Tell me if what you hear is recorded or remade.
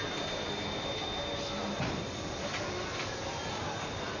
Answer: recorded